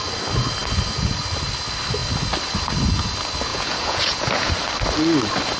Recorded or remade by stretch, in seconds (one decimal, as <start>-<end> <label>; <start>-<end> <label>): 0.0-3.5 recorded; 3.5-4.5 remade; 4.5-5.6 recorded

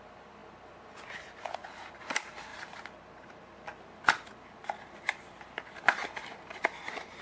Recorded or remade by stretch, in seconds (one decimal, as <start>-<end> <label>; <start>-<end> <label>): 0.0-7.2 recorded